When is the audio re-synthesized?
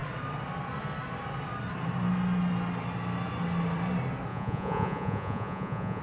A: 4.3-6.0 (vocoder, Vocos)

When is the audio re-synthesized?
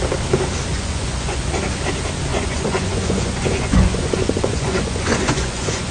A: 0.7-1.4 (vocoder, Vocos); 2.3-5.9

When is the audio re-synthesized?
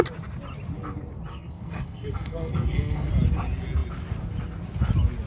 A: 1.3-3.1 (codec, SNAC)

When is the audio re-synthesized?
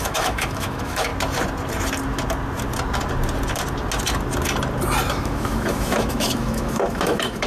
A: 0.0-1.1 (autoencoder, DAC-VAE); 5.1-7.5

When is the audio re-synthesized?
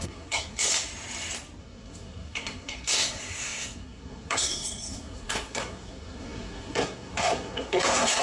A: 0.0-0.7 (codec, SNAC); 1.6-8.2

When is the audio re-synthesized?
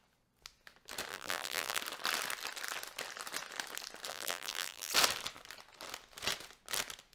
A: 1.1-1.8 (vocoder, BigVGAN v2); 4.1-4.9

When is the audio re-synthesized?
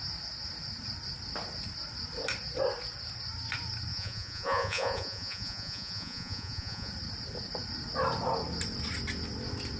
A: 3.9-6.9 (vocoder, Vocos)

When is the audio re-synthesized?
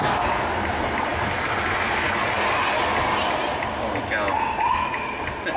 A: none